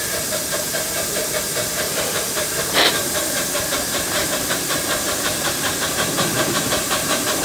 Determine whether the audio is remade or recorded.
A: remade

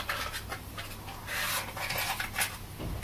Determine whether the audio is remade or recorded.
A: recorded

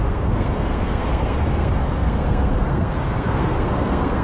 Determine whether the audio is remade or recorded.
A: remade